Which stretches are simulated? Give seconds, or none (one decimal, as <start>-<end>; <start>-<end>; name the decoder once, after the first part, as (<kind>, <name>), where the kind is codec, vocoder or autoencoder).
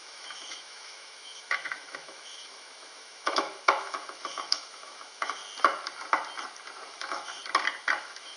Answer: 0.0-5.4 (autoencoder, DAC-VAE); 6.9-7.4; 8.0-8.4